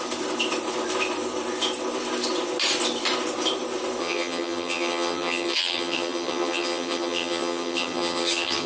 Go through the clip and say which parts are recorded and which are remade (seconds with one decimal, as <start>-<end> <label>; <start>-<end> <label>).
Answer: 0.0-4.0 recorded; 4.0-8.7 remade